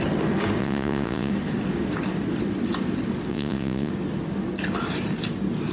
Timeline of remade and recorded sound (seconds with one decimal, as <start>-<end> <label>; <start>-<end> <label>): 0.0-0.6 recorded; 0.6-1.3 remade; 1.3-3.3 recorded; 3.3-3.9 remade; 3.9-5.7 recorded